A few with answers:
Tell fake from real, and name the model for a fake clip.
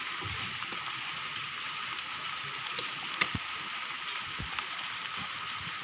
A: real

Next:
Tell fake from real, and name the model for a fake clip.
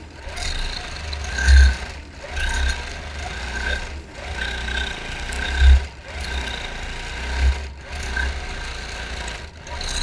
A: real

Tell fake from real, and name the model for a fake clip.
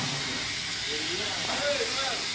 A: real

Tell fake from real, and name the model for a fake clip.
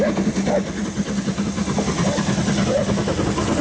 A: real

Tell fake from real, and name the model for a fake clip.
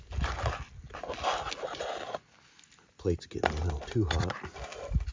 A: real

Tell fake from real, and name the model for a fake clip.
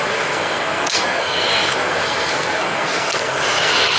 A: fake, codec, SNAC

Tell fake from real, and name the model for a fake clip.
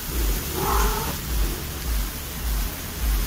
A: real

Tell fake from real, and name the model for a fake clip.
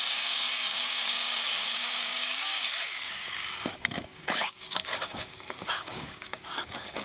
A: fake, codec, DAC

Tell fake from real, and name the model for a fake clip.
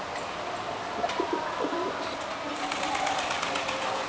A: real